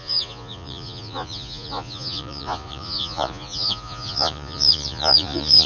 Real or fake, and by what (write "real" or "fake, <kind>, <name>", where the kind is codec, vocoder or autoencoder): fake, vocoder, Vocos